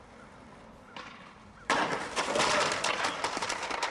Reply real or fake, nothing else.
fake